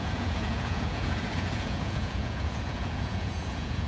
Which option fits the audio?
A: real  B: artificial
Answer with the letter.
B